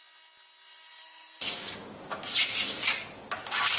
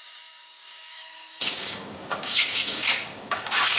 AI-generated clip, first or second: second